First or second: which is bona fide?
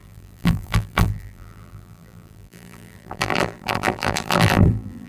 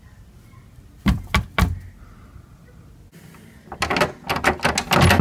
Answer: second